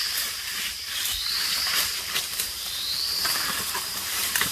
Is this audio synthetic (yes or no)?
yes